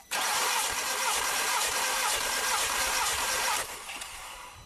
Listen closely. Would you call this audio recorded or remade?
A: remade